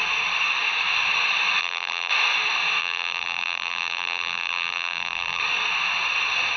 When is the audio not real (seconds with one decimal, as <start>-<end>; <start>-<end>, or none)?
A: 1.6-2.1; 2.8-5.4